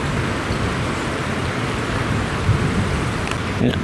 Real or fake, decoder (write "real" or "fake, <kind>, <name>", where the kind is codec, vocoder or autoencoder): real